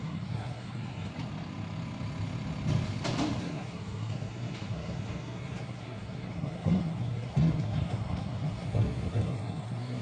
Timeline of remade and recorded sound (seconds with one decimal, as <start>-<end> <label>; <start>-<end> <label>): 0.0-1.1 remade; 1.1-3.4 recorded; 3.4-10.0 remade

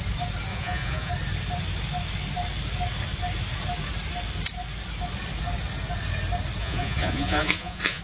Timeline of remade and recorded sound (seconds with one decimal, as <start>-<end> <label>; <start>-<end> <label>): 0.0-0.5 recorded; 0.5-1.1 remade; 1.1-6.6 recorded; 6.6-8.0 remade

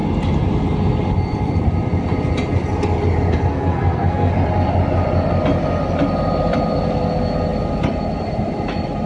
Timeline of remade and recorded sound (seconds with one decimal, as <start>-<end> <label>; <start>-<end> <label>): 0.0-3.5 recorded; 3.5-4.3 remade; 4.3-9.1 recorded

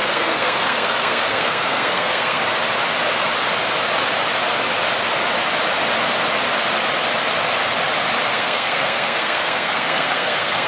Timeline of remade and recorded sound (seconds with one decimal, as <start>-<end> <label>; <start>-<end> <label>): 0.0-2.4 remade; 2.4-8.3 recorded; 8.3-10.7 remade